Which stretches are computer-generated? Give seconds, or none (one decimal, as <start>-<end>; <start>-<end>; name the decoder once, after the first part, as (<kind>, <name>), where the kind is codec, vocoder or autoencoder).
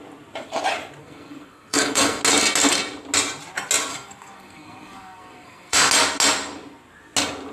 1.0-2.2 (codec, SNAC); 3.9-5.9